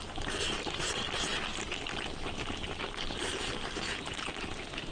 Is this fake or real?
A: real